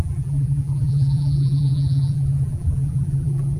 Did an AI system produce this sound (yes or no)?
yes